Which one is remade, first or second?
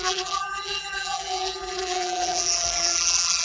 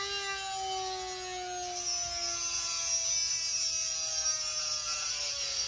first